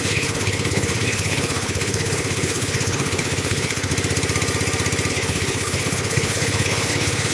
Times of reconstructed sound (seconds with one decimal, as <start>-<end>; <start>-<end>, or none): 0.0-3.9; 5.1-7.3